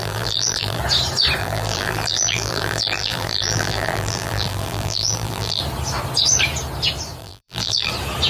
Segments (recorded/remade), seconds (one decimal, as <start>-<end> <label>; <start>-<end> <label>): 0.0-0.8 remade; 0.8-1.4 recorded; 1.4-5.6 remade; 5.6-7.2 recorded; 7.2-7.9 remade; 7.9-8.3 recorded

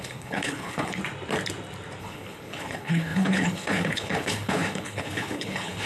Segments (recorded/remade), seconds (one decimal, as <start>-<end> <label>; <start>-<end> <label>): 0.0-1.0 remade; 1.0-2.0 recorded; 2.0-5.9 remade

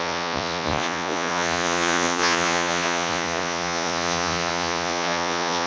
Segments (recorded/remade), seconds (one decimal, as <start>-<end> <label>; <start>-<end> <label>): 0.0-5.7 remade

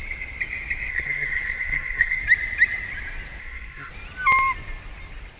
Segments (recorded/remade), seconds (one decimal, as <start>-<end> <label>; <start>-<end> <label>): 0.0-0.9 recorded; 0.9-2.2 remade; 2.2-3.4 recorded; 3.4-3.9 remade; 3.9-5.4 recorded